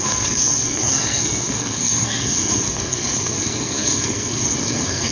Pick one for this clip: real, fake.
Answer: fake